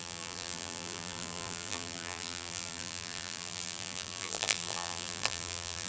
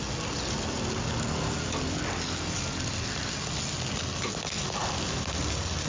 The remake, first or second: first